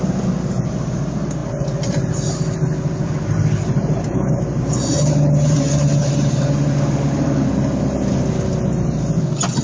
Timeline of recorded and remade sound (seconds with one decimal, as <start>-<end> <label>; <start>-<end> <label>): 0.0-9.6 recorded